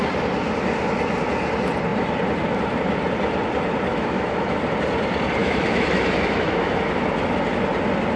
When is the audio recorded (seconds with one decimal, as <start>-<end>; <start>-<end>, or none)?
0.0-3.9; 4.6-5.4; 6.7-8.2